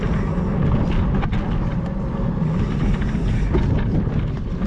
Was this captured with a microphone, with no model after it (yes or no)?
yes